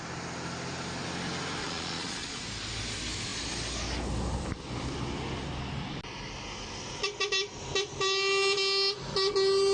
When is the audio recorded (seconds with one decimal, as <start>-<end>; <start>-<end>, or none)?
0.0-1.6; 2.4-9.7